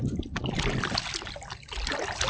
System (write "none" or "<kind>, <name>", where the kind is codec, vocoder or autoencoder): none